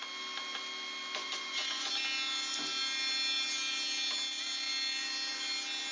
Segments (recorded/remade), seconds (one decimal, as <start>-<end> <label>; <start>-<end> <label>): 0.0-1.2 recorded; 1.2-1.9 remade; 1.9-5.9 recorded

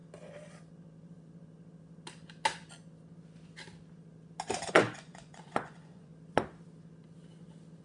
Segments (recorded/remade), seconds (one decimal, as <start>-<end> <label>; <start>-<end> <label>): 0.0-4.7 recorded; 4.7-6.1 remade; 6.1-7.8 recorded

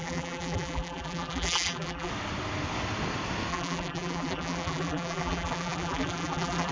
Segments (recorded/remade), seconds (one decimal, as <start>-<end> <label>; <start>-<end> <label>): 0.0-2.1 remade; 2.1-3.5 recorded; 3.5-6.7 remade

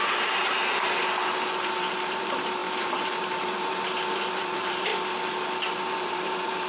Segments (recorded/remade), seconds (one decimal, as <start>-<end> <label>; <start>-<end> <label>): 0.0-0.6 remade; 0.6-1.8 recorded; 1.8-4.9 remade; 4.9-5.8 recorded; 5.8-6.7 remade

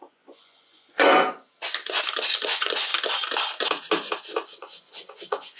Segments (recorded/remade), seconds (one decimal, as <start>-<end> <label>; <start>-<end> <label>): 0.0-1.1 remade; 1.1-2.4 recorded; 2.4-2.9 remade; 2.9-4.6 recorded; 4.6-5.6 remade

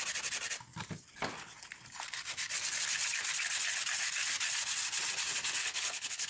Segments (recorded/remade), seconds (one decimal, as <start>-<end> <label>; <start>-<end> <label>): 0.0-5.6 recorded; 5.6-6.3 remade